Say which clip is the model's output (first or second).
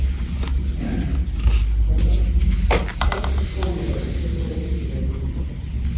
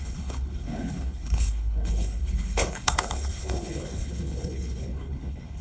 second